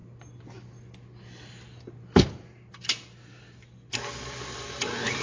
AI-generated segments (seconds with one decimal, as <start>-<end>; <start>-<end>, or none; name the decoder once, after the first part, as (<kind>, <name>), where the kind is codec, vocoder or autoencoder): none